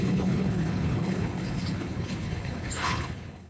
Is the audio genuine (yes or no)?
no